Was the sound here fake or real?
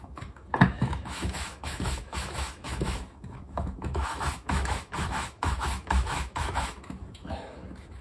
fake